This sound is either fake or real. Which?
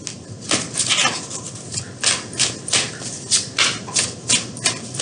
real